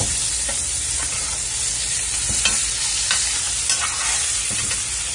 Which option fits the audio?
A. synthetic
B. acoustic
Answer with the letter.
B